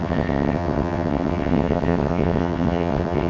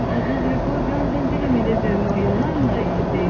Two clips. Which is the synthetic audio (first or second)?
first